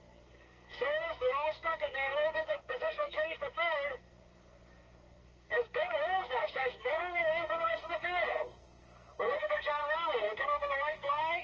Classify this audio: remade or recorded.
remade